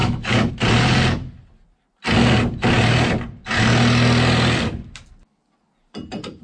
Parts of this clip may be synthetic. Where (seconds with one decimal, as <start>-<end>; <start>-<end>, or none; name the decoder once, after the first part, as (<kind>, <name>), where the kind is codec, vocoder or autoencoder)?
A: 0.0-0.5 (codec, DAC)